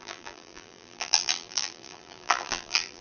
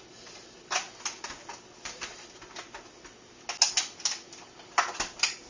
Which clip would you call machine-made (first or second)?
first